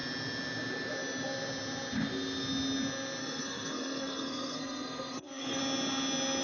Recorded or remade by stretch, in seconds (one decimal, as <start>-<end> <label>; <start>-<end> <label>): 0.0-3.2 recorded; 3.2-5.6 remade; 5.6-6.4 recorded